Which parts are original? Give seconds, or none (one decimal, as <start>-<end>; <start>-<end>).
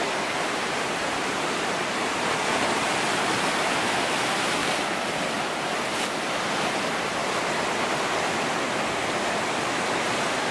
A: 4.6-6.5; 7.2-9.4